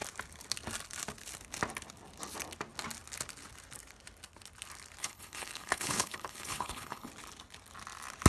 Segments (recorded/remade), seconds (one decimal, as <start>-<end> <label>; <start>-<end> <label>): 0.0-5.0 recorded; 5.0-7.1 remade; 7.1-8.3 recorded